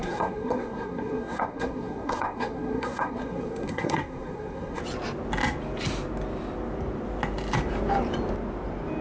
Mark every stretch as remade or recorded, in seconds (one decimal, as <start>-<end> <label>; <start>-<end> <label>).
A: 0.0-4.8 remade; 4.8-9.0 recorded